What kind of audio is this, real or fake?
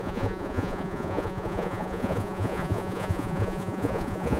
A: fake